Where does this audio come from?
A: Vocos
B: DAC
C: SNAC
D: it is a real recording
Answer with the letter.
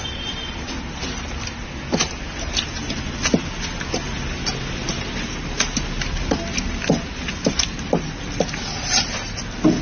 D